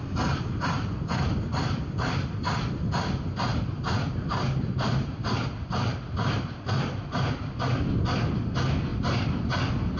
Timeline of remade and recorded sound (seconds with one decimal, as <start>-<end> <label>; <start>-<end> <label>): 0.0-3.5 recorded; 3.5-7.6 remade; 7.6-8.9 recorded; 8.9-9.4 remade; 9.4-10.0 recorded